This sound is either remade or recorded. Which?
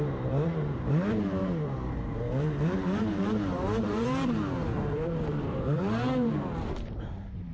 remade